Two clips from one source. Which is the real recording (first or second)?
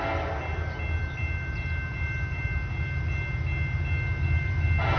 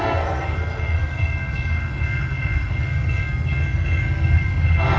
first